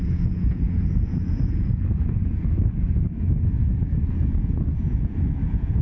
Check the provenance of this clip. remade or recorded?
remade